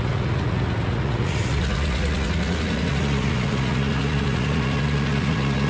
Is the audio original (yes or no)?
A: no